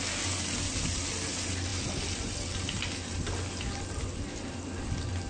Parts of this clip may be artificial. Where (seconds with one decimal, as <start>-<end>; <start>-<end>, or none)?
none